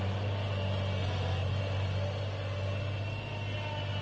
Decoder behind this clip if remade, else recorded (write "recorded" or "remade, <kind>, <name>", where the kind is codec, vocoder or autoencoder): recorded